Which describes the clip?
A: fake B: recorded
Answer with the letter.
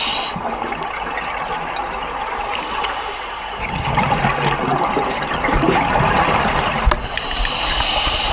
B